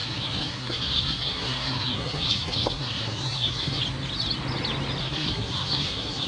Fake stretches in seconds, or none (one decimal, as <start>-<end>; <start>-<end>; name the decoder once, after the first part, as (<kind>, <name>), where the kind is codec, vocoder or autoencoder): 0.0-3.8 (codec, SNAC); 5.0-6.3